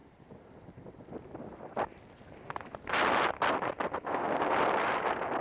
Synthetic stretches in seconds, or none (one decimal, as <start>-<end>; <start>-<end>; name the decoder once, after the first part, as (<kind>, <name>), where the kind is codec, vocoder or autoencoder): none